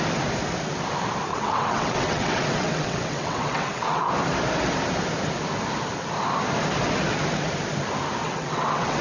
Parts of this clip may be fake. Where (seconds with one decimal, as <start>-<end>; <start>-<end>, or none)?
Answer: 1.3-4.0; 8.2-9.0